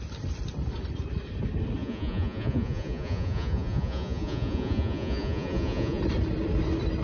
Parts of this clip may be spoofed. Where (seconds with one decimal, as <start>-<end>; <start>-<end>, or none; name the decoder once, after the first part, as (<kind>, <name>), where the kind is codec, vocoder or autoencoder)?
1.8-6.0 (vocoder, Vocos)